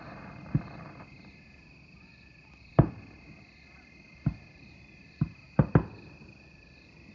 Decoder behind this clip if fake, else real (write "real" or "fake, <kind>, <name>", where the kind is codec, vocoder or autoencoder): real